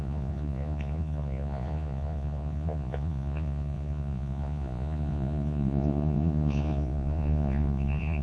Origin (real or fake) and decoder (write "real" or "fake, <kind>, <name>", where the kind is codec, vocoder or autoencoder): fake, vocoder, Vocos